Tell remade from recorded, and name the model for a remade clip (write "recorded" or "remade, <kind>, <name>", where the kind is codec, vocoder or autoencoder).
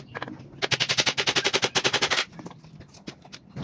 recorded